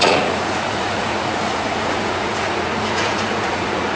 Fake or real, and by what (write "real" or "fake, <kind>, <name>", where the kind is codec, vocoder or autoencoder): fake, vocoder, Vocos